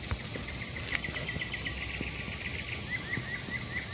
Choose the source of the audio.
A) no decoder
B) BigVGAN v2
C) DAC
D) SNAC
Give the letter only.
A